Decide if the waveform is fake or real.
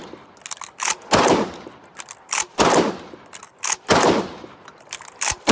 real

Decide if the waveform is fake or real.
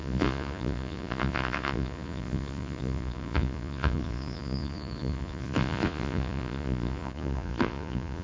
fake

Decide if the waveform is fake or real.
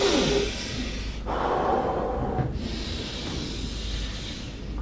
real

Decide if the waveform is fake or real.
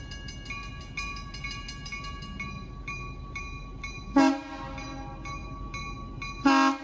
real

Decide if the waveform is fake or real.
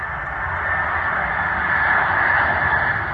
real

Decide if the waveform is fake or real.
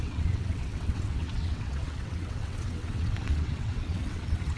fake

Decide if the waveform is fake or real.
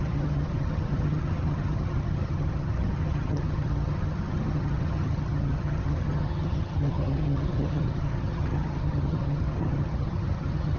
fake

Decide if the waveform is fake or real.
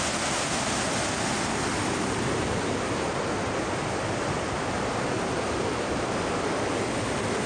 real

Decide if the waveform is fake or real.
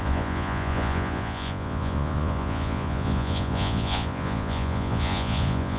fake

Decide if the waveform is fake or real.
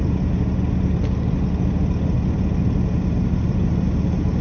real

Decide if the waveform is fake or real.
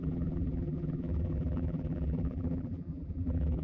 fake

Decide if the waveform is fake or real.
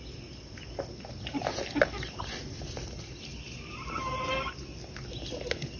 real